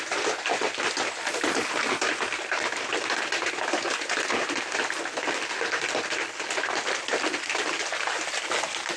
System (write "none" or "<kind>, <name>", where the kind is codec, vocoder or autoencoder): none